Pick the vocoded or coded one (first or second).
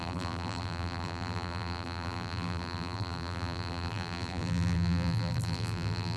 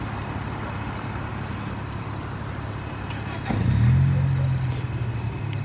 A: first